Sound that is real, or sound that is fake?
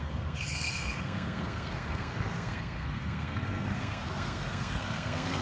fake